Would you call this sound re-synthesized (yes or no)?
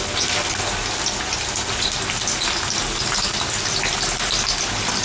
no